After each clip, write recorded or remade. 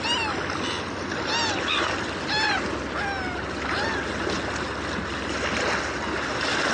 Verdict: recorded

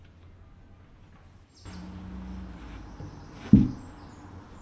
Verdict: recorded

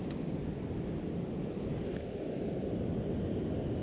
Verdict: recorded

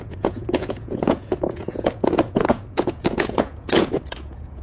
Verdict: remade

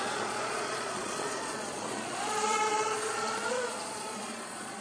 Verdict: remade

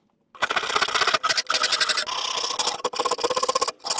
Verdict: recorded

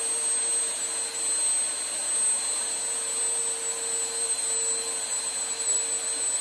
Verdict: recorded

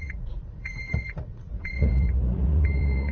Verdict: remade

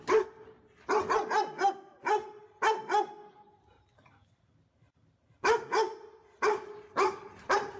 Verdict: recorded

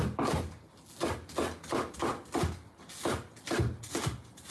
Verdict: recorded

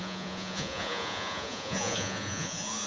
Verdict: remade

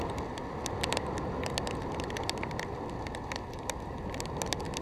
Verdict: recorded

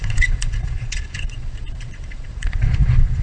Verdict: remade